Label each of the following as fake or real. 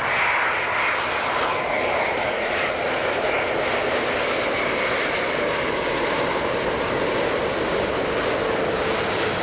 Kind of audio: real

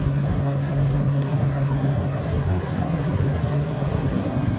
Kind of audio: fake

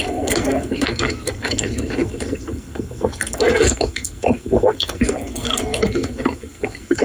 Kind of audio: fake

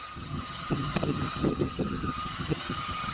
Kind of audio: fake